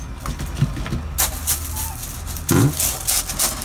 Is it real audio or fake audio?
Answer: real